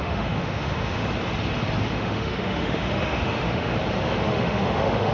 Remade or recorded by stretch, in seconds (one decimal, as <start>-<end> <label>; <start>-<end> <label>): 0.0-1.0 remade; 1.0-1.9 recorded; 1.9-3.7 remade; 3.7-4.3 recorded; 4.3-5.1 remade